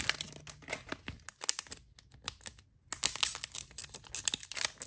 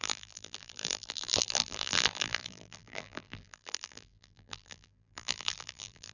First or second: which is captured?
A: first